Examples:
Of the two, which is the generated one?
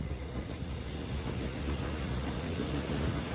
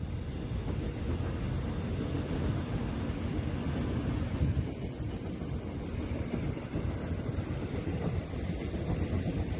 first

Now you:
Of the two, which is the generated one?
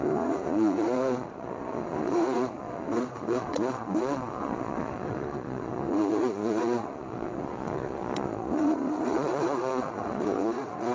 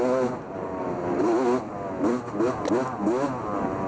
first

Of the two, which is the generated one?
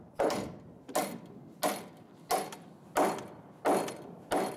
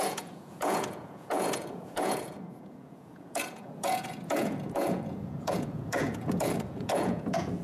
second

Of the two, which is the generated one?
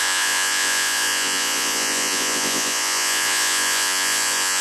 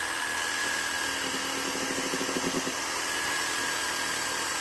first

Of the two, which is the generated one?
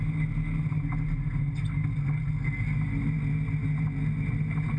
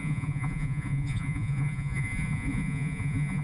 second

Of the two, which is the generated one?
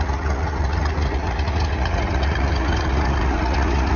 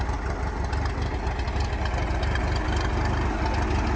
first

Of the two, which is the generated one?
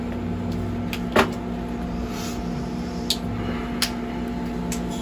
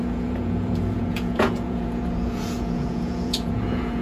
second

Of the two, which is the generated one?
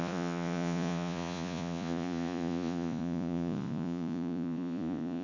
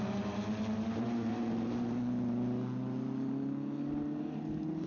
first